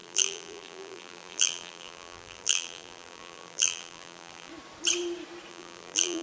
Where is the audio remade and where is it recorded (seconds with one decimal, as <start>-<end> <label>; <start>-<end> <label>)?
0.0-4.5 remade; 4.5-5.5 recorded; 5.5-6.2 remade